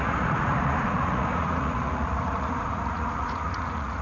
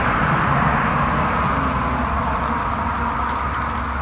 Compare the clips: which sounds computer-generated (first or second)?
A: first